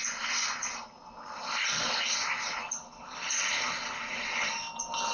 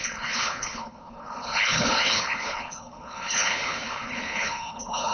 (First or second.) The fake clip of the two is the second